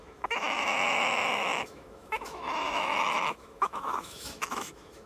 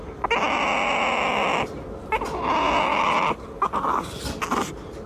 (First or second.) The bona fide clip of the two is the second